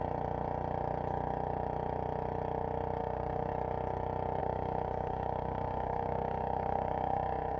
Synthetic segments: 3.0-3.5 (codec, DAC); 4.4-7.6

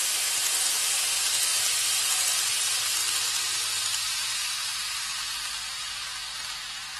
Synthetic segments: none